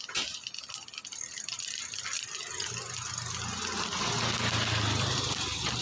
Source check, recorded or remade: recorded